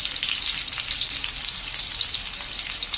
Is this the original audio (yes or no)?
yes